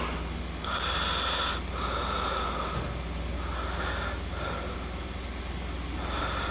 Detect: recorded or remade recorded